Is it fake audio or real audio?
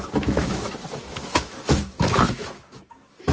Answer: fake